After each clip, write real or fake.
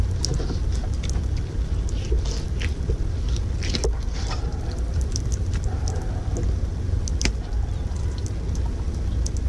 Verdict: real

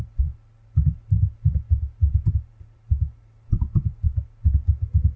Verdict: real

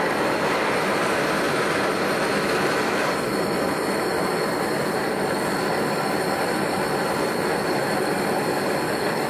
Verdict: fake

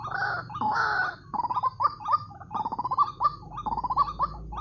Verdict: real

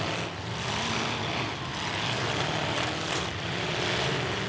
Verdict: fake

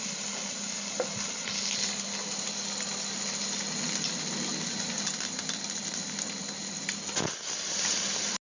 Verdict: real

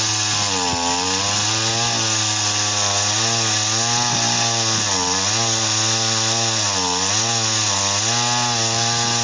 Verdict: real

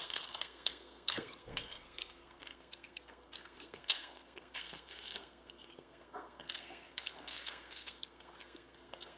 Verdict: fake